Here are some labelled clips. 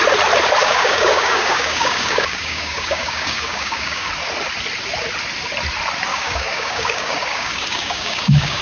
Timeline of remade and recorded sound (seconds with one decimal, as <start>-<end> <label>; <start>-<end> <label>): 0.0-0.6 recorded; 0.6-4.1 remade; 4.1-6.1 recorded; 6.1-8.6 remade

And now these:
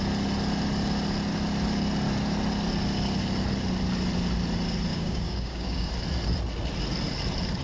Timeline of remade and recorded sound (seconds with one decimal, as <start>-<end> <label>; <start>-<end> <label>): 0.0-4.9 recorded; 4.9-5.9 remade; 5.9-7.6 recorded

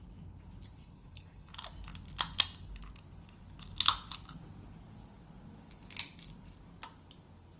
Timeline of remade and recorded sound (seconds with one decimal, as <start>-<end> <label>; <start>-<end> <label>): 0.0-0.8 recorded; 0.8-1.5 remade; 1.5-7.6 recorded

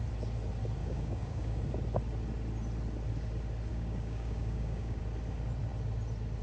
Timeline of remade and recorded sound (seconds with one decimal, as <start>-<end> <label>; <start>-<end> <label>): 0.0-0.8 recorded; 0.8-1.6 remade; 1.6-3.7 recorded; 3.7-5.0 remade; 5.0-6.4 recorded

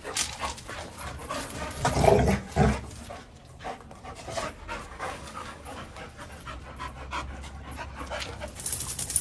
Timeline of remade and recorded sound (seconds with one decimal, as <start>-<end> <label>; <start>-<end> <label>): 0.0-4.9 recorded; 4.9-6.0 remade; 6.0-9.2 recorded